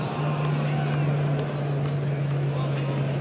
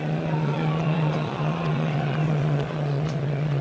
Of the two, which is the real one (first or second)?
first